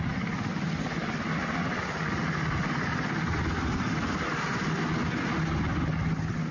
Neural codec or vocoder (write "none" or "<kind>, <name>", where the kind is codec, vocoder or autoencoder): none